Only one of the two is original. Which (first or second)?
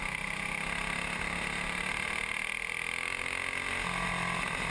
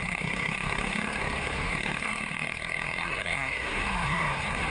first